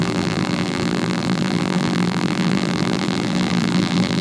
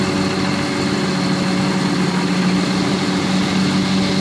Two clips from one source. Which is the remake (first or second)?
first